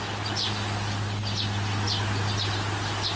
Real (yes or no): yes